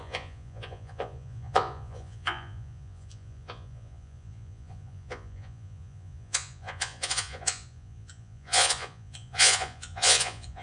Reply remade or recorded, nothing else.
remade